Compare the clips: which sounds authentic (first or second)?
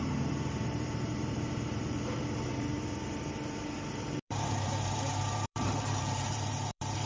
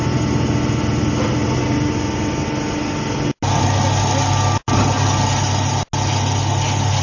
second